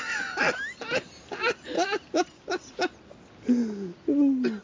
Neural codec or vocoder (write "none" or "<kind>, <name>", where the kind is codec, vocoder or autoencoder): none